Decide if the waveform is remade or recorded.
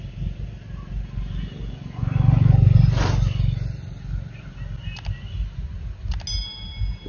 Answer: recorded